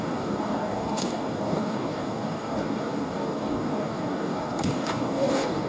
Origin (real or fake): fake